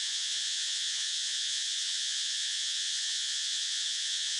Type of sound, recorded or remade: remade